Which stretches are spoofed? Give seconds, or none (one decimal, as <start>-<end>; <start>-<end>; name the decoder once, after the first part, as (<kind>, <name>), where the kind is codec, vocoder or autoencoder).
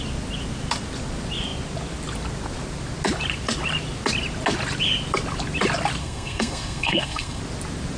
6.0-7.4 (codec, SNAC)